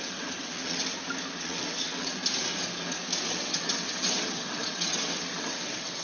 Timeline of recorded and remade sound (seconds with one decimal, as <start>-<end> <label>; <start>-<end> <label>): 0.0-0.8 remade; 0.8-1.3 recorded; 1.3-2.2 remade; 2.2-3.3 recorded; 3.3-6.0 remade